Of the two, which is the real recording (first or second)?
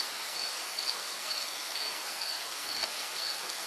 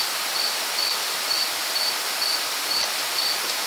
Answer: second